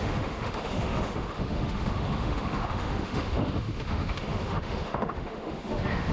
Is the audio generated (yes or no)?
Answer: yes